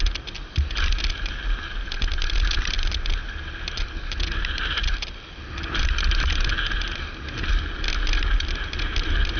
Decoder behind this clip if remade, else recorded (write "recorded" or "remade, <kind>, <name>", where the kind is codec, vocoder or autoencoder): recorded